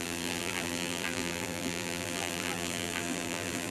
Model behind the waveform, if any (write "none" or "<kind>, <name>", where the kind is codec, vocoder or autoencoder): vocoder, BigVGAN v2